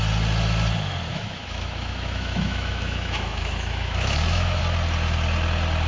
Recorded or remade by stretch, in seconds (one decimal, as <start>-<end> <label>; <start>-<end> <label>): 0.0-1.1 recorded; 1.1-4.6 remade; 4.6-5.9 recorded